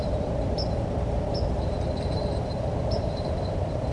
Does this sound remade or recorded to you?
remade